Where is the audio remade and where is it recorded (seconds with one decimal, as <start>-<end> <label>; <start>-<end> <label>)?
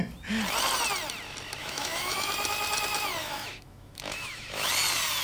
0.0-1.6 recorded; 1.6-2.3 remade; 2.3-3.2 recorded; 3.2-4.7 remade; 4.7-5.2 recorded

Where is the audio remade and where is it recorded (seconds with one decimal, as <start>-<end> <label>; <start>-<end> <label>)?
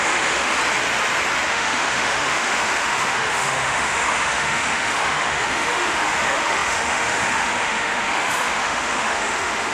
0.0-0.6 remade; 0.6-1.5 recorded; 1.5-9.7 remade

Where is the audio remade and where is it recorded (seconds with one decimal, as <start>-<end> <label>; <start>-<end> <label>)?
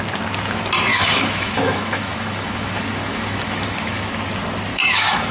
0.0-0.9 recorded; 0.9-4.1 remade; 4.1-4.7 recorded; 4.7-5.3 remade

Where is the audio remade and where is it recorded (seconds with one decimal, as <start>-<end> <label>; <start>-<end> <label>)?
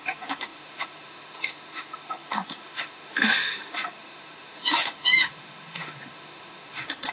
0.0-7.1 remade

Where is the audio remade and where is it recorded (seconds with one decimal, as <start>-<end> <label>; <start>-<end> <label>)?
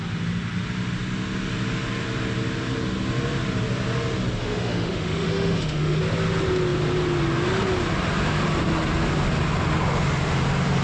0.0-4.4 recorded; 4.4-6.0 remade; 6.0-10.8 recorded